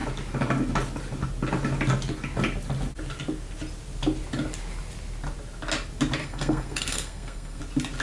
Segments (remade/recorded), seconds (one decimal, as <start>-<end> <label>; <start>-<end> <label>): 0.0-6.2 recorded; 6.2-7.6 remade; 7.6-8.0 recorded